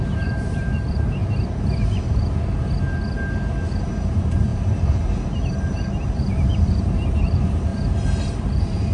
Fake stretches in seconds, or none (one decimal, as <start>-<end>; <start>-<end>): 0.0-1.2; 3.8-7.7; 8.4-8.9

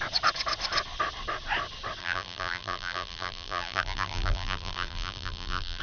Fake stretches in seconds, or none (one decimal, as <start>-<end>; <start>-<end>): 2.0-5.8

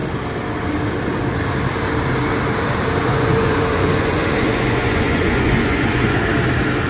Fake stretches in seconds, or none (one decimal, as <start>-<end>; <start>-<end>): 3.0-6.2

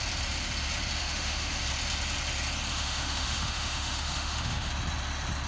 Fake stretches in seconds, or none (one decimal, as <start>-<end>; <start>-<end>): 1.0-1.6; 2.7-4.7

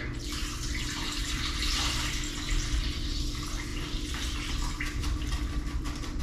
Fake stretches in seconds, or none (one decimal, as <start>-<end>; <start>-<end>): 3.7-6.2